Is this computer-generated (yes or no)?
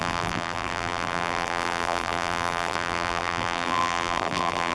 yes